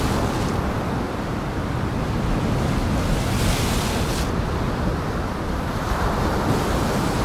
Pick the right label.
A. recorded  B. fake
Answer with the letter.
A